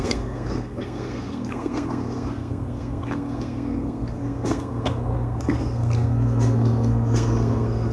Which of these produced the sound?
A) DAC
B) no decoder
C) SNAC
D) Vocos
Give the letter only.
C